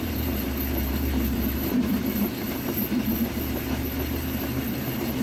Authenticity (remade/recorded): remade